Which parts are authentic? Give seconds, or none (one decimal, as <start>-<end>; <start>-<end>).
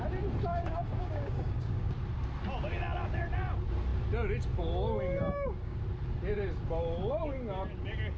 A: 0.0-0.5; 1.9-5.2; 5.8-8.2